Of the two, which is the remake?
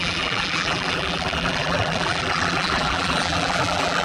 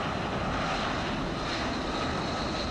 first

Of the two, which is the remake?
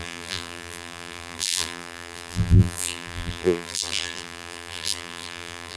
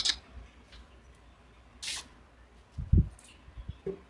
first